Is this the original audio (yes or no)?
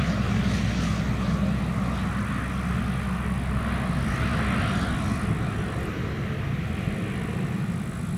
yes